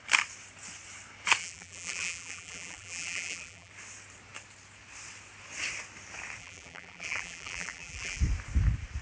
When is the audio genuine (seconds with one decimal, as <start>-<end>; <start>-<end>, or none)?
0.0-1.4; 3.7-6.4; 8.2-9.0